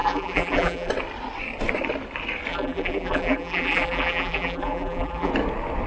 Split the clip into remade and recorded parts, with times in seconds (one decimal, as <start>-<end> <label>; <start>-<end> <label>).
0.0-0.9 remade; 0.9-2.5 recorded; 2.5-5.3 remade; 5.3-5.9 recorded